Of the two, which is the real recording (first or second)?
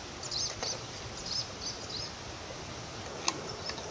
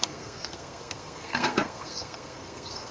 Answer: first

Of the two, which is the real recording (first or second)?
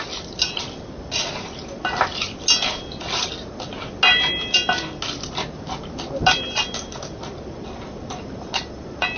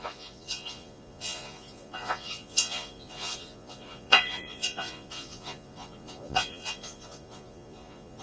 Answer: first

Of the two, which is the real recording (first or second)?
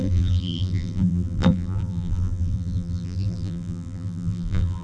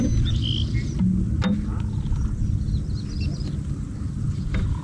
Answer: second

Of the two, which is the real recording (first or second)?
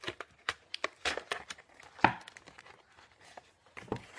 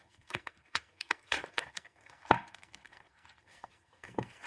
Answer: first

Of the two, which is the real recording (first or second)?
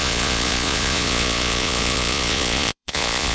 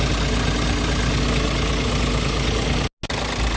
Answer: second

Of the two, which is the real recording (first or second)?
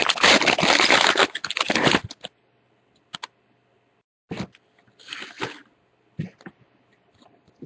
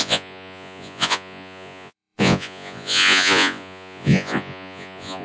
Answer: first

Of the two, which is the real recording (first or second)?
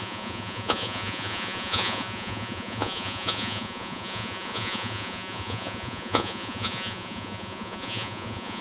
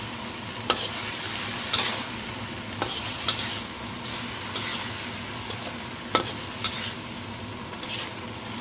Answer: second